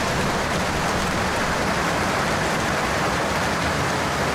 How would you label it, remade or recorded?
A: recorded